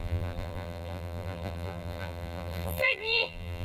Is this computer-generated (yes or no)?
yes